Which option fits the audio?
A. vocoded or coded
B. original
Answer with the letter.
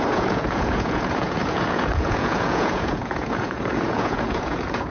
A